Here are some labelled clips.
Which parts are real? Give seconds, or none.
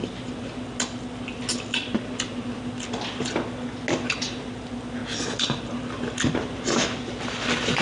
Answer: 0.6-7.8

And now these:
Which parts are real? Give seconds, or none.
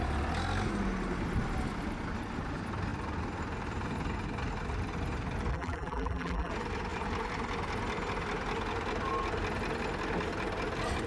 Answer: 0.0-5.5; 6.5-11.1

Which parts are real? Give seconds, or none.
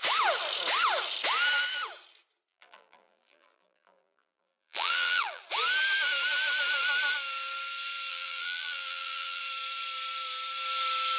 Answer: 0.0-2.5; 5.4-8.1; 9.4-11.2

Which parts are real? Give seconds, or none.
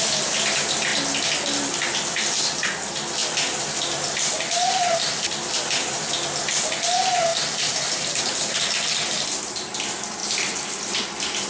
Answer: 0.0-3.2; 6.1-7.3; 8.2-11.5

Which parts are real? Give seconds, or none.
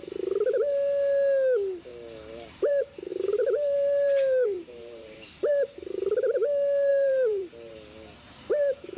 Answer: 0.0-3.1; 5.5-6.9; 7.7-9.0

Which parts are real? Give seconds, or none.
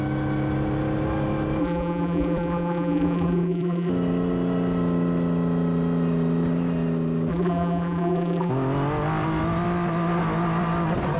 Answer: 0.0-1.6; 3.9-7.3; 8.5-11.2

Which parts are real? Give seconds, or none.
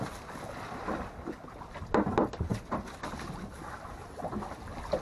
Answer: 0.0-5.0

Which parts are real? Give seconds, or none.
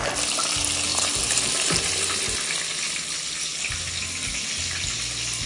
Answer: 0.0-0.9; 2.2-5.5